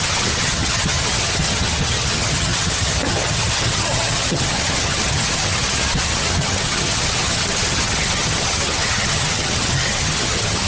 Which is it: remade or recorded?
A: remade